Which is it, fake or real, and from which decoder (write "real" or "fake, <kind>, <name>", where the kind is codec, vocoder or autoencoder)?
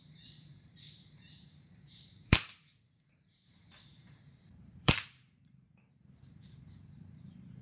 fake, vocoder, BigVGAN v2